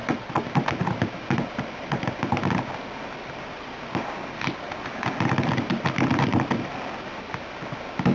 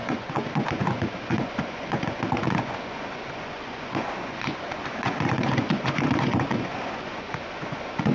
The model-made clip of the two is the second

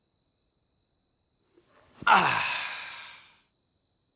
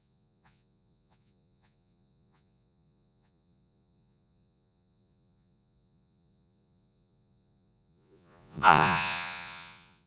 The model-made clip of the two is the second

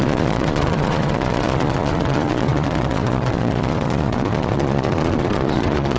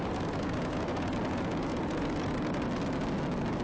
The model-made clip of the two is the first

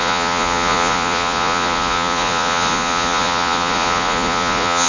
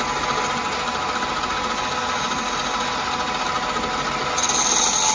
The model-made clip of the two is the first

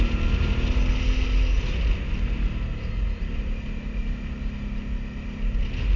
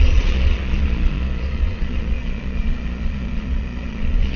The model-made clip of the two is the second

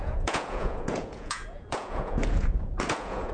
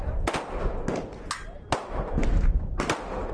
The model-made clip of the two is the first